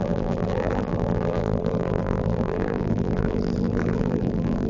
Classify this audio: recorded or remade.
remade